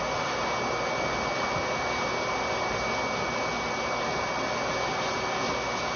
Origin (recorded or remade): recorded